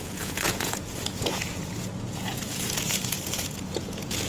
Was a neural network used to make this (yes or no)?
yes